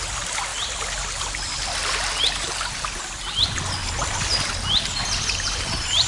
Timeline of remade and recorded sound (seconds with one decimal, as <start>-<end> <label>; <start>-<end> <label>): 0.0-0.5 recorded; 0.5-1.9 remade; 1.9-3.8 recorded; 3.8-4.5 remade; 4.5-6.1 recorded